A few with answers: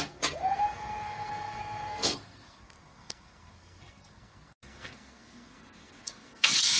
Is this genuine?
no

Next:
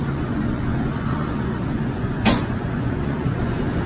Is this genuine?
no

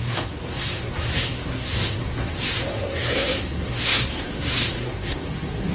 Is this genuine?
no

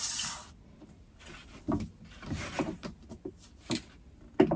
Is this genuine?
yes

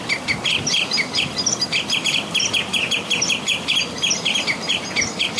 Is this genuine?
yes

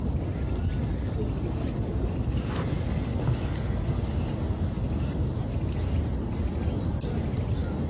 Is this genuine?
yes